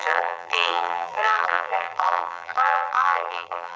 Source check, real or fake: fake